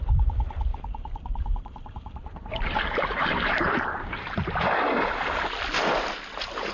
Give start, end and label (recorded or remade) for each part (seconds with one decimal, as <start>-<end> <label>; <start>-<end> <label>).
0.0-0.7 recorded; 0.7-4.7 remade; 4.7-6.7 recorded